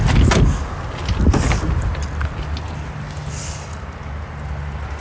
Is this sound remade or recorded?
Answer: recorded